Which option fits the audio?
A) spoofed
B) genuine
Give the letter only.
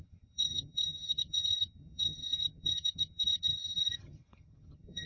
A